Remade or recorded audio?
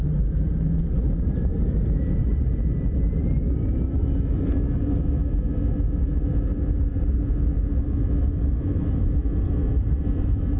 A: recorded